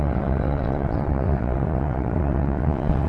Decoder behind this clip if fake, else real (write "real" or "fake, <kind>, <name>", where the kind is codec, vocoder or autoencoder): fake, vocoder, WaveNeXt